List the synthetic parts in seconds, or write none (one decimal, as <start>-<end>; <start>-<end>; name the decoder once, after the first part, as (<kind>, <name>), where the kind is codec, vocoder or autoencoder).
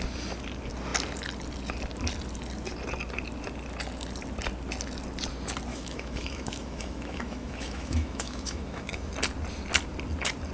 5.7-9.1 (autoencoder, DAC-VAE)